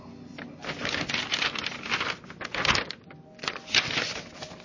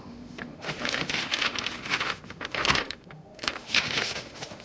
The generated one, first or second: second